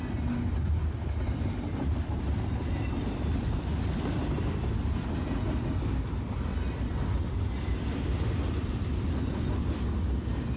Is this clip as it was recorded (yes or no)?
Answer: yes